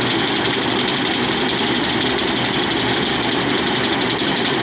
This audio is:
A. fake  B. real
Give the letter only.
B